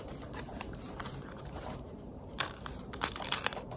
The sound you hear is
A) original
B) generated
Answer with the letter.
B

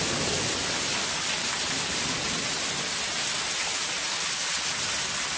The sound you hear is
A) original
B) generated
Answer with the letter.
A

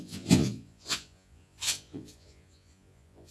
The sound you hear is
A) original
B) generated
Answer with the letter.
B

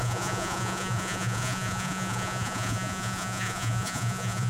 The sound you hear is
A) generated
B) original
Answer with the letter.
A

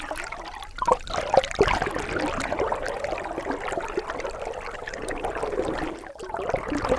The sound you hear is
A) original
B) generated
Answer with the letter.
A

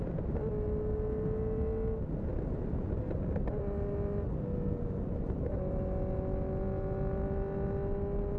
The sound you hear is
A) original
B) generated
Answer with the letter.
A